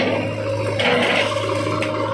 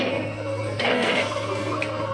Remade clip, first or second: second